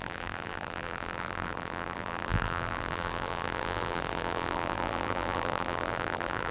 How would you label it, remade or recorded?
remade